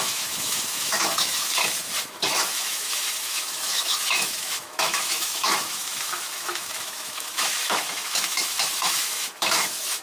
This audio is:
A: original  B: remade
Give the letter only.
B